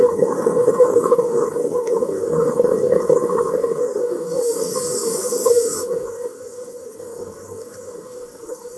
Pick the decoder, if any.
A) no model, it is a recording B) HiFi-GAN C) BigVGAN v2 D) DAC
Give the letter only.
D